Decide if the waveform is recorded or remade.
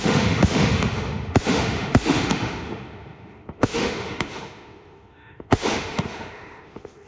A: remade